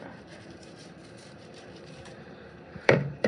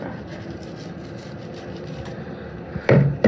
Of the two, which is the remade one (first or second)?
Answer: first